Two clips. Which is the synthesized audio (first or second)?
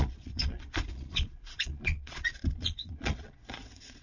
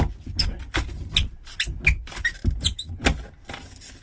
first